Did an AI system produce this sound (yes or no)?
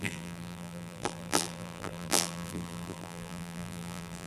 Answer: yes